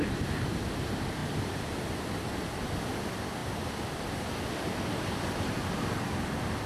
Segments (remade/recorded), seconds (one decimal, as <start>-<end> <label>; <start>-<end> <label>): 0.0-3.4 recorded; 3.4-4.3 remade; 4.3-6.7 recorded